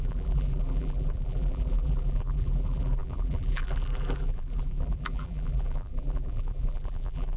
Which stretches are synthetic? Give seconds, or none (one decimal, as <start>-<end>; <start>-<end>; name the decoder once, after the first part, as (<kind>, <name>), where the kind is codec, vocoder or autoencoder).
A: 0.0-7.4 (vocoder, BigVGAN v2)